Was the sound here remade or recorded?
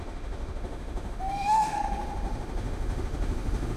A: remade